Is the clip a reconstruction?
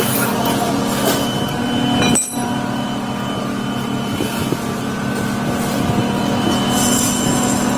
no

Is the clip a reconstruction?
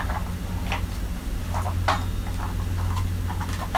no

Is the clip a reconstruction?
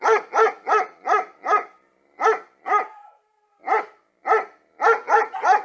no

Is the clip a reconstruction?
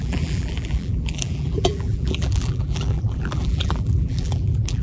yes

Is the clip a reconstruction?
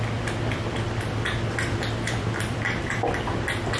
no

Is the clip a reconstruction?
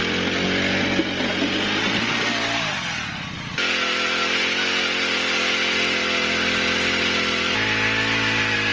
no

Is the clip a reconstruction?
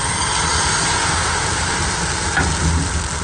no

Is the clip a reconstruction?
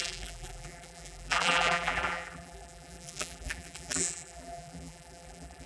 yes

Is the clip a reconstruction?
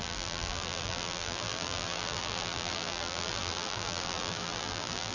yes